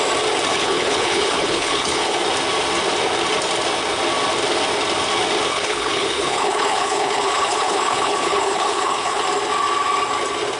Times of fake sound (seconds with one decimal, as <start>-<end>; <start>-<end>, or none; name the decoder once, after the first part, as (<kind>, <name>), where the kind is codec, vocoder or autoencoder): 0.5-2.2 (codec, HILCodec); 5.5-9.2